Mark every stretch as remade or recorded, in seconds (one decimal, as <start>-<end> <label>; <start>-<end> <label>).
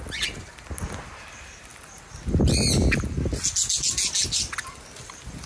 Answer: 0.0-5.5 recorded